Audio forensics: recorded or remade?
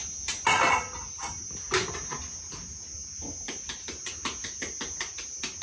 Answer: recorded